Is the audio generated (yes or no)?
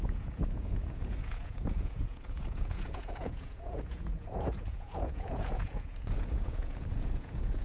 yes